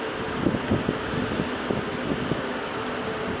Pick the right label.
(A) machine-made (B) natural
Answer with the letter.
B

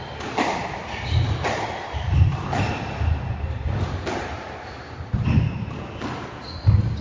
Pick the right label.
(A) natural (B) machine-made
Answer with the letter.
A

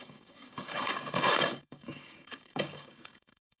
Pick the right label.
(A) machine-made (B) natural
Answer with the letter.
A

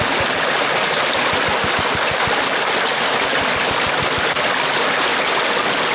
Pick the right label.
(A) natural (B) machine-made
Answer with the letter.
A